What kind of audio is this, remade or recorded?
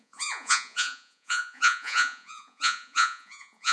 remade